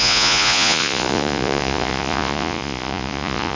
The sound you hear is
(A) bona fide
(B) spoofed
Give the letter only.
B